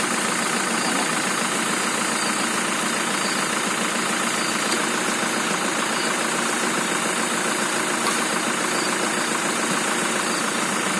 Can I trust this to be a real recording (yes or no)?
yes